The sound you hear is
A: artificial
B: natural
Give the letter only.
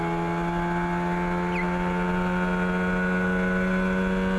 B